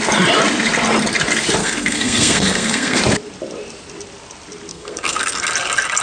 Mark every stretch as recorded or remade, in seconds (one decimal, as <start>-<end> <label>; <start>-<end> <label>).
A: 0.0-1.6 recorded; 1.6-3.0 remade; 3.0-4.7 recorded; 4.7-5.4 remade; 5.4-6.0 recorded